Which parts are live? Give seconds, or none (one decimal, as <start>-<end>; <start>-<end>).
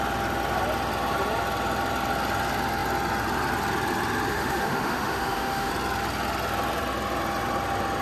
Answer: 0.0-4.3; 5.7-8.0